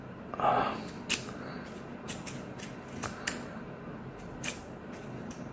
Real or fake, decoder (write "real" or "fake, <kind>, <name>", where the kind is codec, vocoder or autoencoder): real